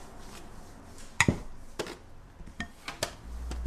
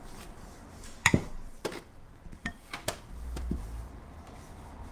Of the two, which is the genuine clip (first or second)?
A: first